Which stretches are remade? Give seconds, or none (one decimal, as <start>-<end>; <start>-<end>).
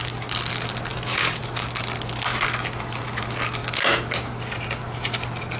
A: 0.9-1.4